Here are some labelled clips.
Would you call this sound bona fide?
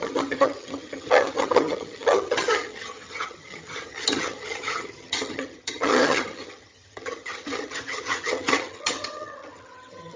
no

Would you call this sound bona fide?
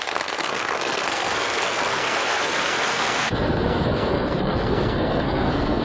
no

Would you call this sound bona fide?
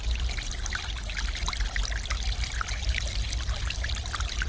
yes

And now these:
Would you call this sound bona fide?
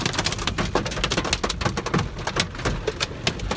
yes